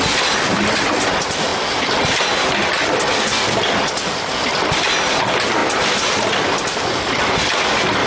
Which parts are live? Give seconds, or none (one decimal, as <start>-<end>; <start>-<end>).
0.0-8.1

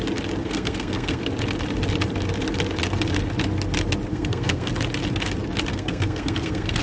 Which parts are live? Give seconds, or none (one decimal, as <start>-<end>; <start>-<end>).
0.0-0.4; 1.2-4.1; 4.7-5.7

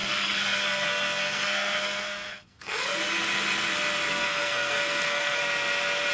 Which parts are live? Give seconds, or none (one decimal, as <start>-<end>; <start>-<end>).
3.0-4.1; 5.4-6.1